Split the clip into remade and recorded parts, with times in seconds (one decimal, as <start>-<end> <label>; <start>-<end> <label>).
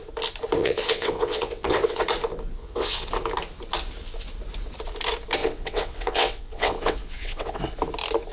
0.0-0.6 recorded; 0.6-2.0 remade; 2.0-2.6 recorded; 2.6-3.1 remade; 3.1-5.4 recorded; 5.4-7.6 remade; 7.6-8.3 recorded